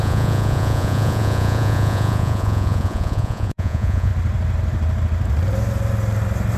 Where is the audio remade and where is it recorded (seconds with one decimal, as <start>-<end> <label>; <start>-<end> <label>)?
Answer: 0.0-4.1 remade; 4.1-6.6 recorded